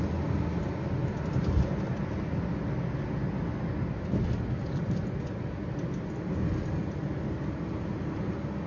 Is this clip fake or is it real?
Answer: real